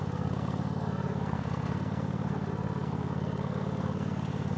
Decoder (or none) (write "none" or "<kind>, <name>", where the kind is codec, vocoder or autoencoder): codec, SNAC